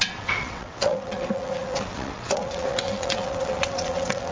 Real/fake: fake